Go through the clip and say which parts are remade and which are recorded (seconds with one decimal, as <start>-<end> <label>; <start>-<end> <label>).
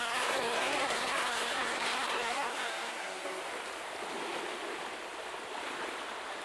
0.0-3.4 remade; 3.4-6.4 recorded